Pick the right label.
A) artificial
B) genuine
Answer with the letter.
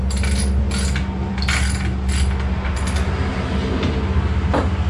B